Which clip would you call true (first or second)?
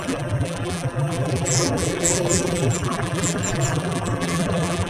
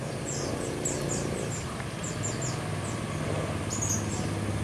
second